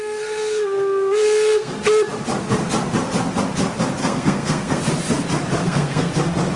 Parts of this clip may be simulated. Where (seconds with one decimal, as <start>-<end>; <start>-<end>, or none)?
0.0-1.7; 4.0-4.8; 5.6-6.1